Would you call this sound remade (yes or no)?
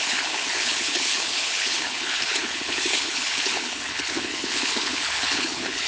yes